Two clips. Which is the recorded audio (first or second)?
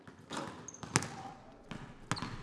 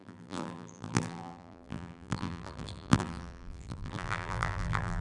first